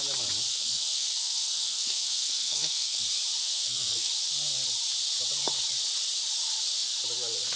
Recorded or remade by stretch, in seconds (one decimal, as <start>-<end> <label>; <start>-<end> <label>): 0.0-0.5 recorded; 0.5-3.0 remade; 3.0-3.4 recorded; 3.4-4.1 remade; 4.1-7.6 recorded